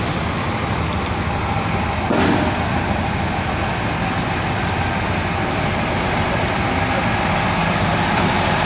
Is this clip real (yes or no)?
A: yes